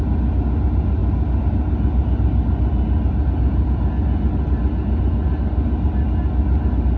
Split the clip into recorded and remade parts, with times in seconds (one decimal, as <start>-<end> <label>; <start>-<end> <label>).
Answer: 0.0-7.0 recorded